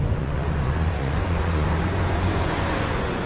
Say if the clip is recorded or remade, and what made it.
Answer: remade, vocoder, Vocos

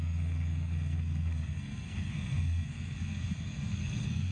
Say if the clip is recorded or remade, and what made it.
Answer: remade, codec, SNAC